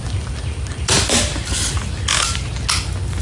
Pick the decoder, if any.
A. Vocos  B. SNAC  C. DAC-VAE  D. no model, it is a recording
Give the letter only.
D